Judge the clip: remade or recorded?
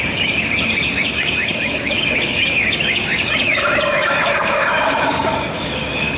remade